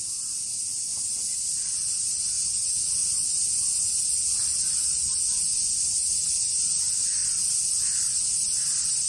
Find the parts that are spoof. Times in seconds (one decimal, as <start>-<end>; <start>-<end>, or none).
none